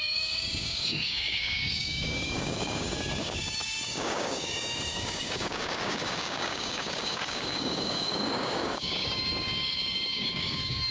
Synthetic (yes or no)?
yes